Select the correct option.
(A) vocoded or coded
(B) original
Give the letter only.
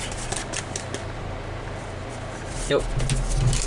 B